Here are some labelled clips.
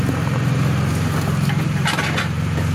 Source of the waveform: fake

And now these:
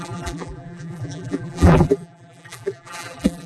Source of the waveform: fake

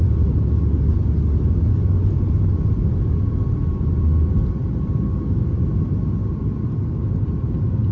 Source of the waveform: real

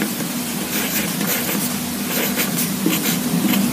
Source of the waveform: real